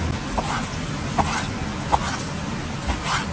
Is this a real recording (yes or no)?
yes